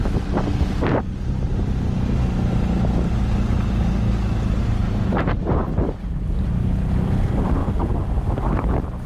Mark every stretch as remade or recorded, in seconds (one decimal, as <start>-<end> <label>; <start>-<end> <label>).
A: 0.0-4.8 recorded; 4.8-5.4 remade; 5.4-9.1 recorded

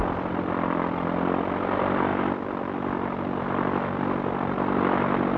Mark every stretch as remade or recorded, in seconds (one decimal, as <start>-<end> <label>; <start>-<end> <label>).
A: 0.0-5.4 recorded